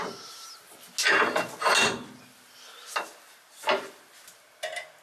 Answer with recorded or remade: recorded